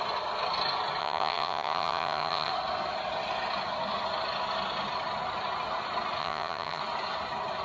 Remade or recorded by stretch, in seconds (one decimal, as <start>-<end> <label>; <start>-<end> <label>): 0.0-1.0 recorded; 1.0-2.5 remade; 2.5-6.2 recorded; 6.2-6.8 remade; 6.8-7.6 recorded